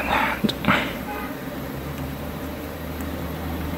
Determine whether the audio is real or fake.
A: fake